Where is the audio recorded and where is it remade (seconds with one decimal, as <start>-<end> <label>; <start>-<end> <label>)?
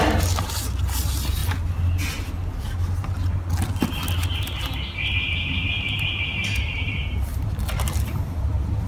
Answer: 0.0-8.9 recorded